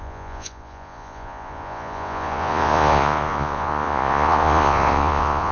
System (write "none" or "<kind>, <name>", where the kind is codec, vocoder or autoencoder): vocoder, Vocos